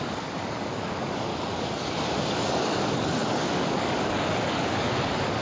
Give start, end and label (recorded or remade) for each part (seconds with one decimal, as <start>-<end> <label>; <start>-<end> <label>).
0.0-1.3 remade; 1.3-2.3 recorded; 2.3-5.4 remade